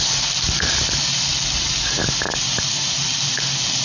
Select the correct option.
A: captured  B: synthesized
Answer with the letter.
A